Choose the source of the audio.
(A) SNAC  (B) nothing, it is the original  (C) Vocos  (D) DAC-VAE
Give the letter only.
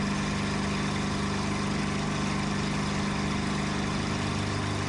B